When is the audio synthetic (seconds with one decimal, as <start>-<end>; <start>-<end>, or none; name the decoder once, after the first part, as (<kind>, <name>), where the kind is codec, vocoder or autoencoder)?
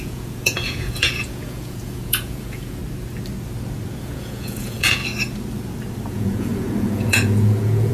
0.0-2.8 (vocoder, Vocos); 4.0-5.0; 6.1-7.9